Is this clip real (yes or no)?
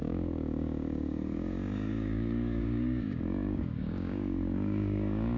no